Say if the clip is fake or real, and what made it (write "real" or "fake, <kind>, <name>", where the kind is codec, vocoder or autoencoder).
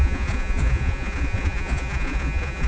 fake, vocoder, Vocos